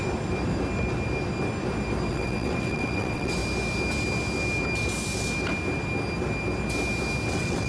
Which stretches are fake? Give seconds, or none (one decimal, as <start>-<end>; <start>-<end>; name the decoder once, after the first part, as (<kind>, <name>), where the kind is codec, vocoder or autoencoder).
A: 2.1-3.4 (vocoder, WaveNeXt); 7.3-7.7